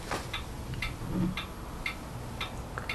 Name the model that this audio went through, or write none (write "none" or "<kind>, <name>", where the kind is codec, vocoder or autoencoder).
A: none